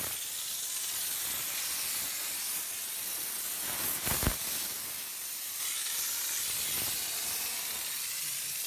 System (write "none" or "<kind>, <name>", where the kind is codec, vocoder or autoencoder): none